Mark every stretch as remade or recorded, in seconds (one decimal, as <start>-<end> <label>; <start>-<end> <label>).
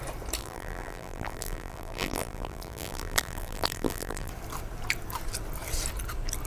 0.0-0.4 recorded; 0.4-4.3 remade; 4.3-6.5 recorded